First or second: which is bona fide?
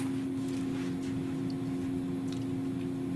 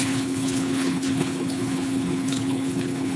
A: first